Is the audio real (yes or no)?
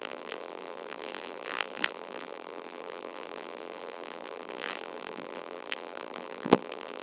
no